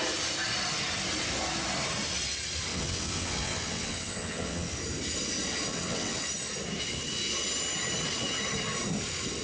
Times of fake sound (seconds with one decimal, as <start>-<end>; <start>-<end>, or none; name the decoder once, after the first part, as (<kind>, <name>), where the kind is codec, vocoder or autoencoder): 2.7-4.7 (vocoder, WaveNeXt); 5.7-6.2